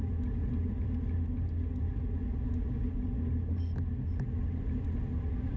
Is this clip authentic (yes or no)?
yes